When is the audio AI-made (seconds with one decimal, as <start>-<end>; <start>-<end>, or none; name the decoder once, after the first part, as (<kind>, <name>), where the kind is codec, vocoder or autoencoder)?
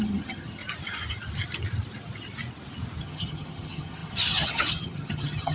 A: 0.0-0.6 (vocoder, HiFi-GAN); 3.0-5.5